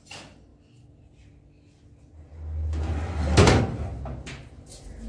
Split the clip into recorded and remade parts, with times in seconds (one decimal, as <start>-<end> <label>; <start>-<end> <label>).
0.0-5.1 recorded